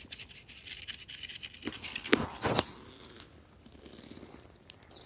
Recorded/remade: recorded